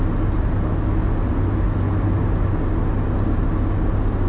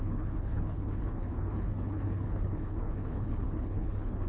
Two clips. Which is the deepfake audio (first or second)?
second